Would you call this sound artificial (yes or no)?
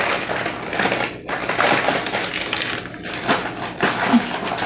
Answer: no